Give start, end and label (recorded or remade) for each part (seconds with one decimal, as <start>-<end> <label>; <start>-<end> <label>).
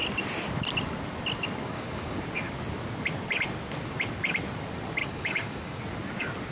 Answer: 0.0-1.6 recorded; 1.6-2.2 remade; 2.2-5.0 recorded; 5.0-5.8 remade; 5.8-6.5 recorded